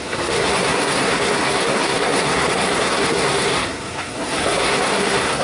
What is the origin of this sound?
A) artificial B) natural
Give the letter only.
A